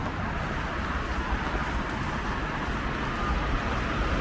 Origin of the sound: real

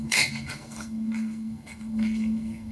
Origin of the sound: fake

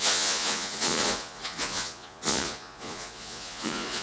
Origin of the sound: fake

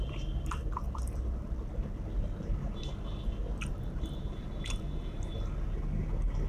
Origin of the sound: real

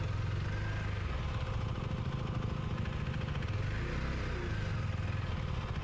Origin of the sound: real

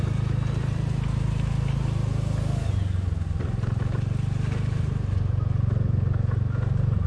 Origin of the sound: real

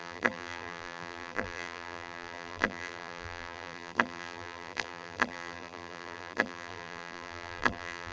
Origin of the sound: fake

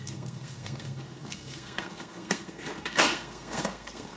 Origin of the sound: fake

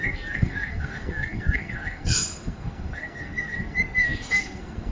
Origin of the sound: fake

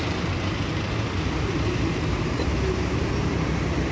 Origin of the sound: fake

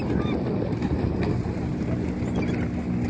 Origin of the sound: real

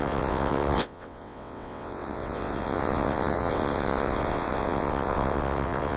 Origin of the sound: fake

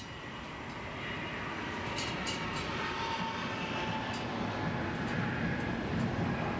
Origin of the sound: real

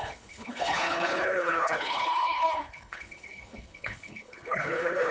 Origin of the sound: fake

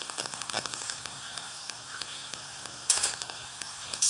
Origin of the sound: fake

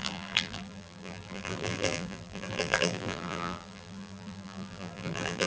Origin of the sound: fake